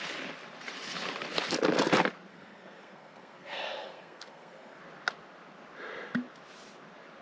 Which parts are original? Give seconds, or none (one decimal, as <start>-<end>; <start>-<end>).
0.0-2.3; 4.8-7.2